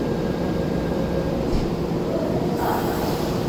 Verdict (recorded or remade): remade